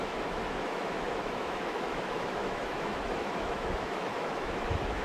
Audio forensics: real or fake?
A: fake